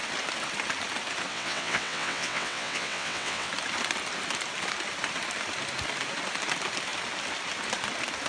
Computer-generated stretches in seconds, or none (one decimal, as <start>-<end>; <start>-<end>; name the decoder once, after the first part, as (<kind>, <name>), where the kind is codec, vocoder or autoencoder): 1.3-3.5 (vocoder, WaveNeXt)